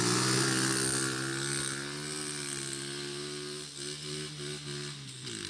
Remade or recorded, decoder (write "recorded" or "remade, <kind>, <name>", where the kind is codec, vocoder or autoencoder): recorded